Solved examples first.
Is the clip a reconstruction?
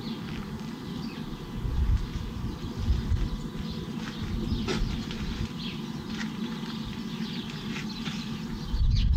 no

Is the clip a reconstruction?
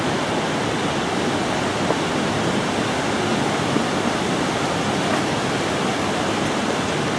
no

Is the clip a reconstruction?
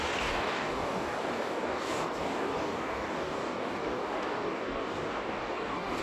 yes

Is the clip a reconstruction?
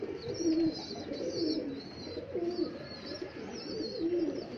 no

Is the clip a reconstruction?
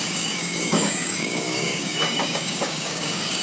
yes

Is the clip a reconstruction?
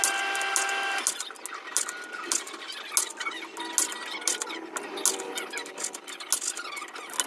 no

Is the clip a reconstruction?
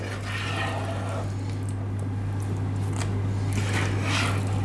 no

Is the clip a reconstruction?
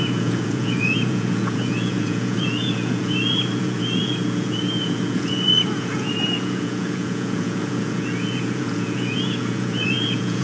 yes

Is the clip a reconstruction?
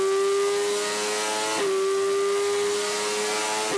no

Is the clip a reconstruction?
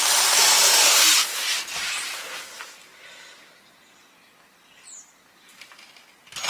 no